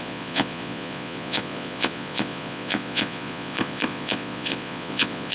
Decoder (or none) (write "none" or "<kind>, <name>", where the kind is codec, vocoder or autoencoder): vocoder, Vocos